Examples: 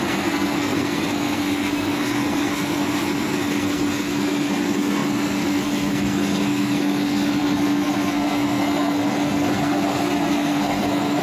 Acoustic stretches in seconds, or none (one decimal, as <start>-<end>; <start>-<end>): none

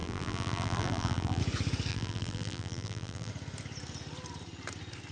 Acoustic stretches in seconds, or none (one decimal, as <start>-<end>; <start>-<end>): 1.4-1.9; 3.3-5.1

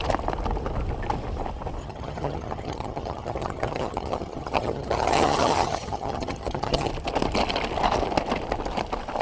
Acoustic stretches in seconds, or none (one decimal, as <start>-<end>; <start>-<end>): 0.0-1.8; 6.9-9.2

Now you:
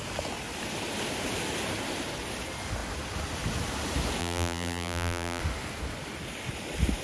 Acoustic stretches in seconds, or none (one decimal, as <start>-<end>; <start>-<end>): 0.0-4.2; 5.4-7.0

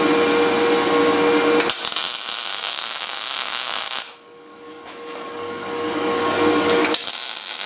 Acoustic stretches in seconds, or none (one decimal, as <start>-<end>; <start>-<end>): 0.0-2.5; 7.1-7.7

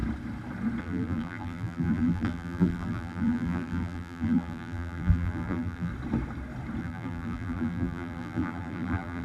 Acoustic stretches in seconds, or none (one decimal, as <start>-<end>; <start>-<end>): 0.0-0.8; 5.9-6.8

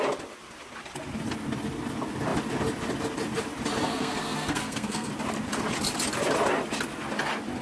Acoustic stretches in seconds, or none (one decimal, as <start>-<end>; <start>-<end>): 0.0-3.9; 5.1-7.6